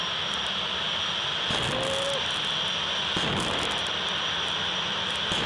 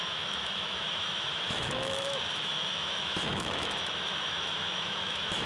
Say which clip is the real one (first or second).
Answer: first